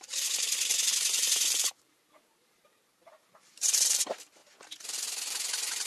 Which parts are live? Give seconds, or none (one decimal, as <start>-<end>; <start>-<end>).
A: 0.5-1.1; 4.4-5.9